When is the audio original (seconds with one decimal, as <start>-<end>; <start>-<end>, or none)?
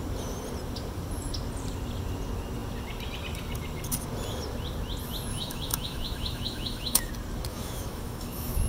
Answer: 0.0-5.3; 7.1-7.5